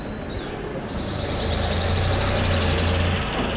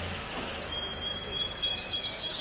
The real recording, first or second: first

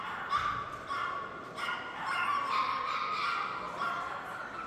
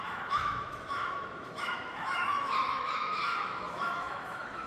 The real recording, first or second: first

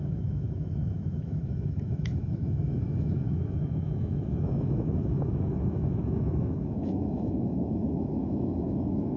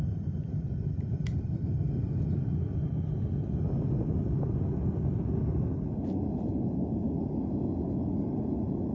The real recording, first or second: second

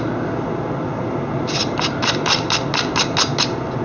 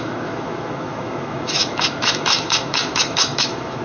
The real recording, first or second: first